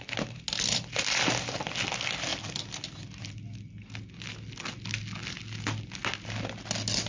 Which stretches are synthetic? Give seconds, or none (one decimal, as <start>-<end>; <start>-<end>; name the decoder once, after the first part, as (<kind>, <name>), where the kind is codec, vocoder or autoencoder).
none